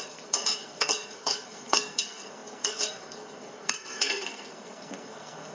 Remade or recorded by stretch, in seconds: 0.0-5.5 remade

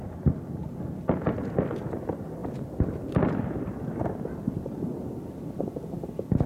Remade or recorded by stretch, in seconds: 0.0-6.5 recorded

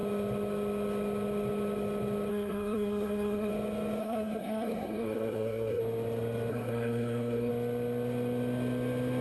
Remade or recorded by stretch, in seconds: 0.0-2.3 recorded; 2.3-3.5 remade; 3.5-4.0 recorded; 4.0-5.8 remade; 5.8-6.5 recorded; 6.5-7.5 remade; 7.5-9.2 recorded

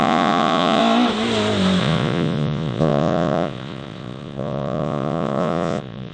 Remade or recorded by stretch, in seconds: 0.0-0.8 remade; 0.8-1.8 recorded; 1.8-6.1 remade